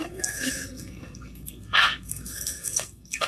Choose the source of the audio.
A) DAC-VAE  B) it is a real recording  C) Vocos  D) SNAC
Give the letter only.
D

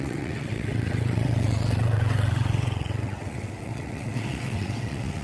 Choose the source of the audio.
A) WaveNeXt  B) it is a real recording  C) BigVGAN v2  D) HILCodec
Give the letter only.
A